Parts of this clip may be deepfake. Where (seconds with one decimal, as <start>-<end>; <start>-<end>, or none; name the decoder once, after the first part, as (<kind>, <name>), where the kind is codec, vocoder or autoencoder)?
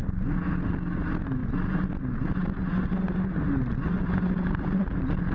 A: none